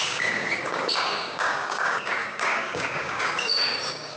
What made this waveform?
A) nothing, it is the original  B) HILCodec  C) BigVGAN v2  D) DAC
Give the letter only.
D